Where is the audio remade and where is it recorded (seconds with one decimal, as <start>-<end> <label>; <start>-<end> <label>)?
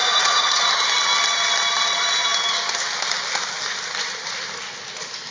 0.0-0.6 remade; 0.6-5.3 recorded